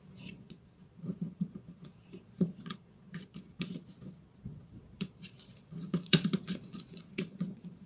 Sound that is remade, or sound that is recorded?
remade